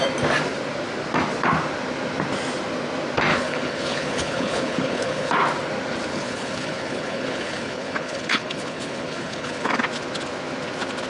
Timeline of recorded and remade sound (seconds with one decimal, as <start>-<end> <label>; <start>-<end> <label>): 0.0-3.3 recorded; 3.3-5.3 remade; 5.3-6.1 recorded; 6.1-9.7 remade; 9.7-11.1 recorded